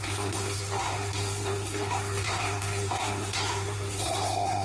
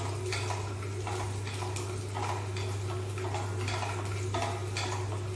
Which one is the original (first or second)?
second